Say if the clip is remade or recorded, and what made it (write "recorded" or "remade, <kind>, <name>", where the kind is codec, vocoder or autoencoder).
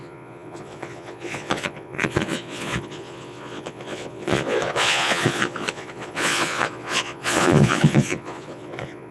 remade, vocoder, Vocos